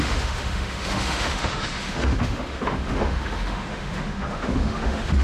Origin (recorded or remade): remade